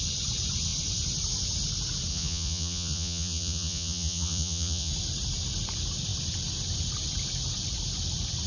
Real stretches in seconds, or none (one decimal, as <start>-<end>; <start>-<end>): 0.0-2.1; 4.9-8.5